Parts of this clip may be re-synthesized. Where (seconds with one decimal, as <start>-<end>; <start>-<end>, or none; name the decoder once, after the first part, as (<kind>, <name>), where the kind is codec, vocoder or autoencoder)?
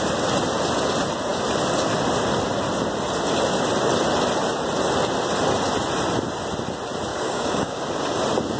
7.1-7.8 (codec, DAC)